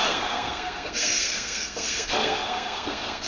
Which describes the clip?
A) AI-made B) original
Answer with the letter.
A